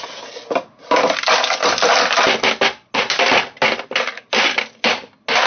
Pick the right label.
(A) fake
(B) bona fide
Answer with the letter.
B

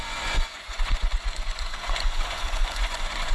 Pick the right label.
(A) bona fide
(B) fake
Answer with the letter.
B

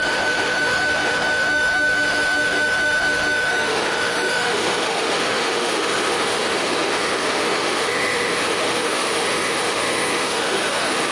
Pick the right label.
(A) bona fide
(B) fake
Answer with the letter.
B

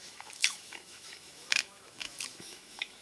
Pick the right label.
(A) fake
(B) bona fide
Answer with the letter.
A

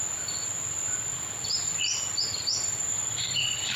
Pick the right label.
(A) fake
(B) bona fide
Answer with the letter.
B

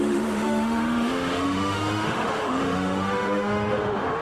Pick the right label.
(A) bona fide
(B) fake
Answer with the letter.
B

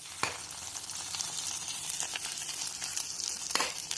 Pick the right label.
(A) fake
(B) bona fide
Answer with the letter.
B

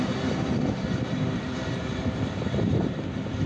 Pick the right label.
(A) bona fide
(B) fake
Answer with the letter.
B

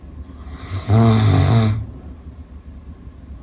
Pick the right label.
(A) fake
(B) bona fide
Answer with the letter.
B